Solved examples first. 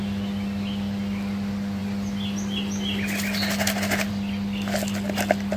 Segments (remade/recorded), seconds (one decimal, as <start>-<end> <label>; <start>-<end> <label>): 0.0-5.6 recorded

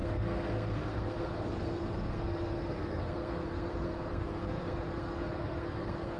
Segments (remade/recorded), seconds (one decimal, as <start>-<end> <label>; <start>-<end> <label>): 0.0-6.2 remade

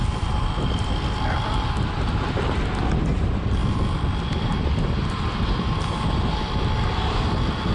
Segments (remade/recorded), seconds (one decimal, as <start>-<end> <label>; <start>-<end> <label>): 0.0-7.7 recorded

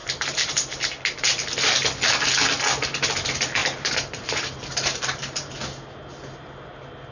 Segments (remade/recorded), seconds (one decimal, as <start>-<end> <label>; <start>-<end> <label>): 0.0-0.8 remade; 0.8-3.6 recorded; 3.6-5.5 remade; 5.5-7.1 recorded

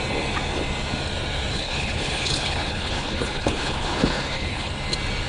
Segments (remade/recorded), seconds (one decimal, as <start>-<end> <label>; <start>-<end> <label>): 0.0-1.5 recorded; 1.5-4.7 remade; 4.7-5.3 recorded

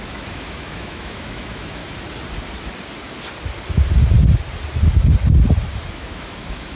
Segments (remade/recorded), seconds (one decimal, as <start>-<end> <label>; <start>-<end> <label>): 0.0-1.8 remade; 1.8-5.9 recorded; 5.9-6.8 remade

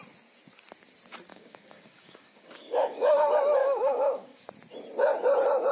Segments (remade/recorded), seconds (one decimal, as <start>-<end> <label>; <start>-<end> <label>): 0.0-1.3 recorded; 1.3-3.2 remade; 3.2-3.6 recorded; 3.6-4.4 remade; 4.4-5.7 recorded

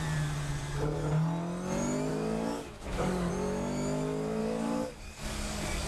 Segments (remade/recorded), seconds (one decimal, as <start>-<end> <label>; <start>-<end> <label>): 0.0-2.1 recorded; 2.1-3.3 remade; 3.3-4.4 recorded; 4.4-5.9 remade